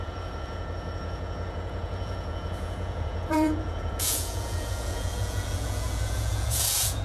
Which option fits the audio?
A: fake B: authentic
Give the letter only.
A